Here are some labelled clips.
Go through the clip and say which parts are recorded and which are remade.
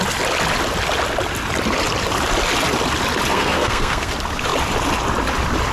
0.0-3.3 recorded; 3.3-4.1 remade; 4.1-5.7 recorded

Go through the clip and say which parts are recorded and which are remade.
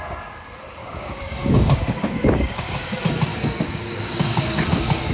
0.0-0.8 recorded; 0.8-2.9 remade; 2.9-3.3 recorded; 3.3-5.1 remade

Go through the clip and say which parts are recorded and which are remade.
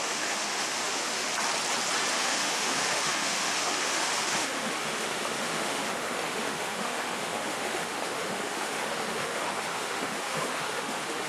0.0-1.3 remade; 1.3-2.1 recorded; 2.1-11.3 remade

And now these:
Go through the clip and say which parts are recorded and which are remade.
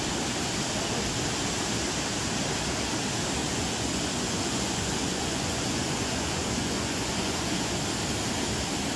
0.0-3.4 recorded; 3.4-7.8 remade; 7.8-9.0 recorded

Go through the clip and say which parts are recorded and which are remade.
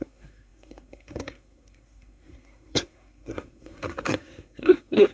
0.0-5.1 remade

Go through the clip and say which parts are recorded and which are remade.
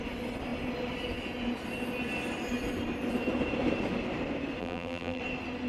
0.0-4.6 recorded; 4.6-5.2 remade; 5.2-5.7 recorded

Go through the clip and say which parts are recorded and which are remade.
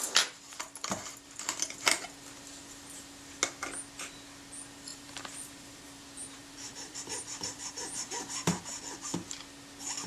0.0-4.9 recorded; 4.9-8.8 remade; 8.8-10.1 recorded